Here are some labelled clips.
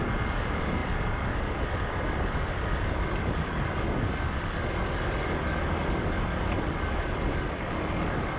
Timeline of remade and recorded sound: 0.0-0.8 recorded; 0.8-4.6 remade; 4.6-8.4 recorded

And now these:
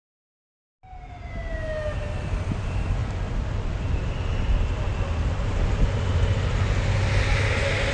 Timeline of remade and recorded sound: 0.0-7.9 recorded

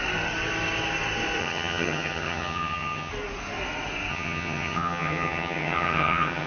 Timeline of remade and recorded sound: 0.0-1.4 recorded; 1.4-3.1 remade; 3.1-4.1 recorded; 4.1-6.5 remade

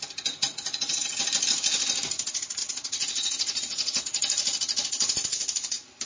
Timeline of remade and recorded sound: 0.0-0.4 recorded; 0.4-1.2 remade; 1.2-2.6 recorded; 2.6-4.0 remade; 4.0-6.1 recorded

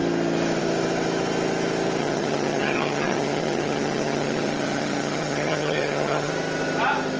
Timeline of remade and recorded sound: 0.0-2.0 recorded; 2.0-6.3 remade; 6.3-7.2 recorded

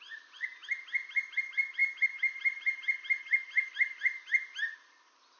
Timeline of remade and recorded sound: 0.0-5.4 recorded